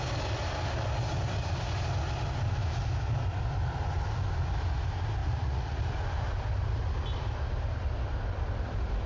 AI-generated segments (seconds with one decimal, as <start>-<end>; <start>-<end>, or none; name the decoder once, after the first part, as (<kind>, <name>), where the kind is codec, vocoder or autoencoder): 5.2-5.8 (vocoder, Vocos)